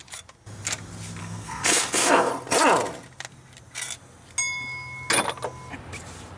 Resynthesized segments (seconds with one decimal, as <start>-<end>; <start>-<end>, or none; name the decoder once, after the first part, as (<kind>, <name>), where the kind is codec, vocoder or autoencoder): 1.2-2.3 (codec, SNAC)